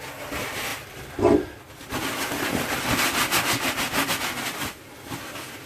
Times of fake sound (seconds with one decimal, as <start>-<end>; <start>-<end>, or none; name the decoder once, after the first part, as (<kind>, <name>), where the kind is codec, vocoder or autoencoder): none